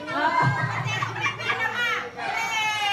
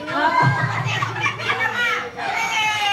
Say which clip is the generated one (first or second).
second